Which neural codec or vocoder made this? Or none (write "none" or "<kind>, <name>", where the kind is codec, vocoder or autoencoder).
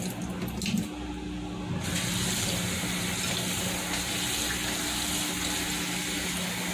none